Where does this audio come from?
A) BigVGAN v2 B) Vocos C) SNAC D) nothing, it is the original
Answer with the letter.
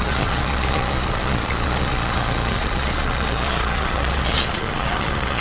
B